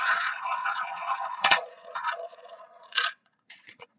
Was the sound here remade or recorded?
remade